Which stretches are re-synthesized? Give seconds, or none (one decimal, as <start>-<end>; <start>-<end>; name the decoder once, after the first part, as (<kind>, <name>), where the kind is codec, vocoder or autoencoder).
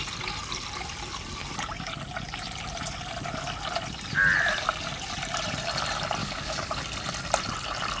6.2-6.8 (codec, DAC)